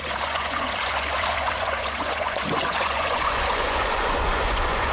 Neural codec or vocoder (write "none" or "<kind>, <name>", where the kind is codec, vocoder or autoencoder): vocoder, Vocos